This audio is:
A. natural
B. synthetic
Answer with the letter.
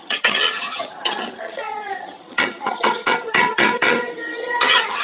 B